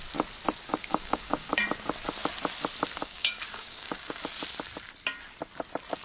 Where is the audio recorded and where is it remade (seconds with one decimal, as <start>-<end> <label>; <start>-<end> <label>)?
0.0-0.8 recorded; 0.8-1.6 remade; 1.6-3.0 recorded; 3.0-4.2 remade; 4.2-6.0 recorded